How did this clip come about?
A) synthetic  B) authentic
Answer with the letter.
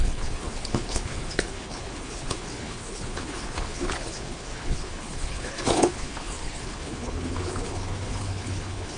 A